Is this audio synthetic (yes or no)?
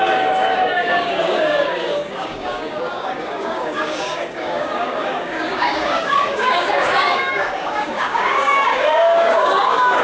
yes